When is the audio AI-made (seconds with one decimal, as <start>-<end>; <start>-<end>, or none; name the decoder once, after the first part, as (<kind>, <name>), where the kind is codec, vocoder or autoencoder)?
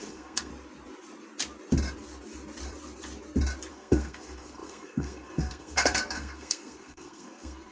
0.0-0.5 (codec, SNAC); 3.7-7.7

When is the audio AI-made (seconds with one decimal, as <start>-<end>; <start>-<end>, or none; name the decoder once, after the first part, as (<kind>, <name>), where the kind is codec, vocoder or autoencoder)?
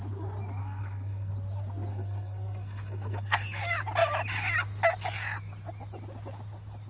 0.6-1.3 (codec, SNAC); 1.9-3.6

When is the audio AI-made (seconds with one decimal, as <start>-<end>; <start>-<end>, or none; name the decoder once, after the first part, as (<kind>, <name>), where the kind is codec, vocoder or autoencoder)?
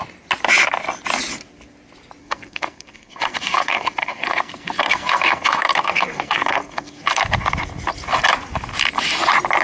2.2-7.2 (codec, SNAC)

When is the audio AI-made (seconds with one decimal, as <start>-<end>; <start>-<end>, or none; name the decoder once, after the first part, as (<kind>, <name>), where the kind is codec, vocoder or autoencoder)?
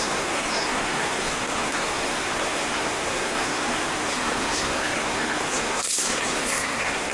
0.0-7.1 (codec, SNAC)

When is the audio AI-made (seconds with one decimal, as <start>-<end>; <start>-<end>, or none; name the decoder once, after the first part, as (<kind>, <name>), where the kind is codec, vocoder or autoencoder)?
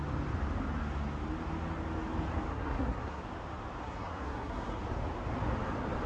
2.5-3.2 (codec, SNAC); 3.8-4.8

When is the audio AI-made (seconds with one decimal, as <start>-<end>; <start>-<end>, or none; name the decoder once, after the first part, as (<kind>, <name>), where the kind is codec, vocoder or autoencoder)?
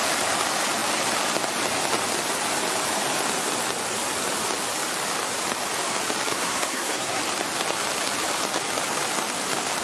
6.3-7.2 (codec, SNAC)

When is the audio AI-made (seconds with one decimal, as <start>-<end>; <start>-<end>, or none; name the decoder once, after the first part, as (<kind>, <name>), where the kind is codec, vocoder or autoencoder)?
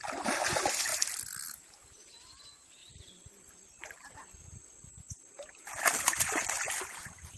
none